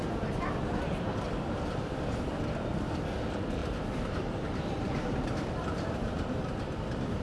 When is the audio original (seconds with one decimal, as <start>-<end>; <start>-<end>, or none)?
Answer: 0.0-3.6